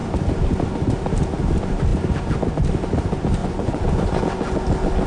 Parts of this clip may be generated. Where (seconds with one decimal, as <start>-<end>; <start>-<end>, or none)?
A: 3.4-4.2